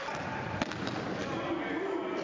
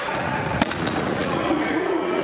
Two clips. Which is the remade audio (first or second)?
second